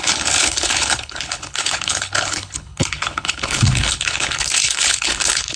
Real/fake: fake